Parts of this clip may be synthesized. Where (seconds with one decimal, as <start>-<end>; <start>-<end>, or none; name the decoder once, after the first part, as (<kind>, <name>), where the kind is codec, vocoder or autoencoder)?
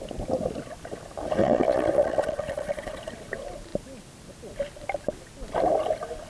1.4-3.1 (vocoder, Vocos)